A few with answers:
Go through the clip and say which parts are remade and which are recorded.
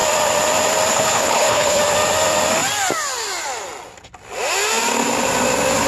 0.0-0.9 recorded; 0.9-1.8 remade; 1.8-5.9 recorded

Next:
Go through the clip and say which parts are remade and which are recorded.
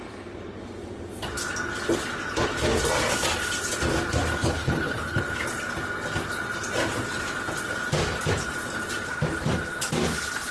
0.0-4.4 recorded; 4.4-5.2 remade; 5.2-10.5 recorded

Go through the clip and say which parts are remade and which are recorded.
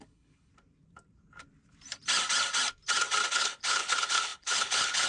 0.0-0.5 remade; 0.5-3.3 recorded; 3.3-5.1 remade